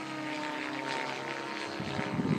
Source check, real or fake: real